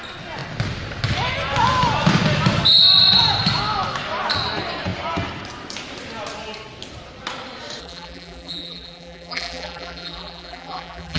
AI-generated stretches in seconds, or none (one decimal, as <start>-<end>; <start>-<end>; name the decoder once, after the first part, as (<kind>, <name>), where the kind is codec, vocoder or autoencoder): 7.8-11.2 (vocoder, BigVGAN v2)